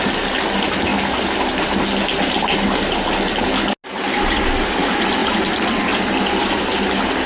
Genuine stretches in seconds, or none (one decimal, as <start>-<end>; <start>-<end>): 0.0-7.3